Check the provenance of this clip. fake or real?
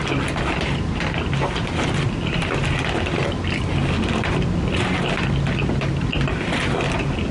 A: real